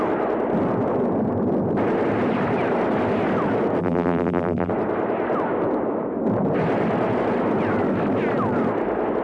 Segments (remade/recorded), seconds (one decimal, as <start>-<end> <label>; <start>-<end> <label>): 0.0-3.8 recorded; 3.8-4.7 remade; 4.7-9.2 recorded